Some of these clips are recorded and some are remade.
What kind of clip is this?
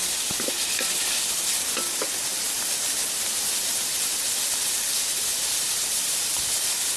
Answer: recorded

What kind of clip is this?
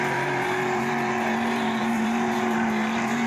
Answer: remade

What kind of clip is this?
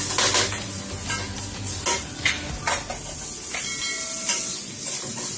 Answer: recorded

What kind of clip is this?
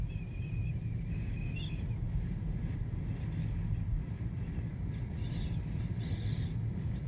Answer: recorded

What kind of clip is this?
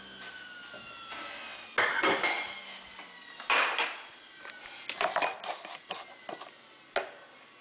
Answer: recorded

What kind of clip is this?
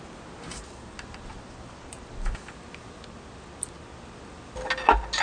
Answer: recorded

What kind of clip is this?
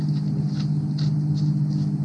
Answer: recorded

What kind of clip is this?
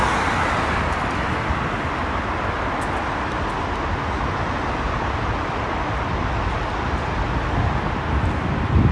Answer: recorded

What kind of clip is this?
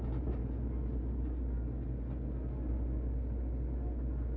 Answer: recorded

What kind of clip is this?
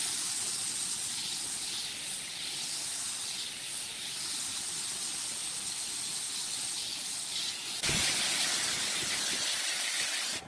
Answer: recorded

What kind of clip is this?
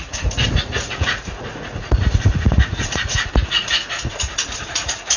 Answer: remade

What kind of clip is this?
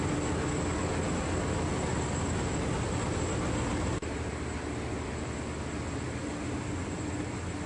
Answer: recorded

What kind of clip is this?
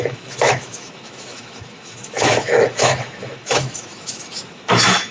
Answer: remade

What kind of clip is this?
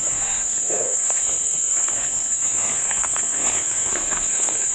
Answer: remade